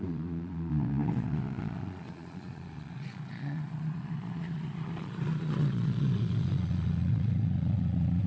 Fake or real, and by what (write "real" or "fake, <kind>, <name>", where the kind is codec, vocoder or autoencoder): fake, vocoder, Vocos